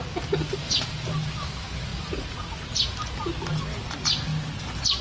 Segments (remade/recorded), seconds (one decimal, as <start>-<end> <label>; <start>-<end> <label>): 0.0-5.0 recorded